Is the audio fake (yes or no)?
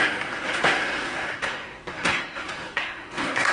yes